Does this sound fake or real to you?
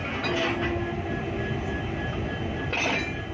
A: real